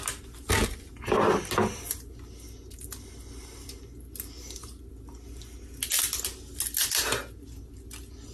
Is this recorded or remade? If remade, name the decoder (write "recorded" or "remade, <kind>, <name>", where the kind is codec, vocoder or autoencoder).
recorded